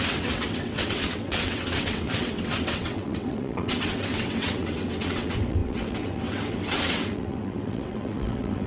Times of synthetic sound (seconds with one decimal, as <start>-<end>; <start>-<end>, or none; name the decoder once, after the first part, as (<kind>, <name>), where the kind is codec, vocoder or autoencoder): 0.0-8.7 (vocoder, WaveNeXt)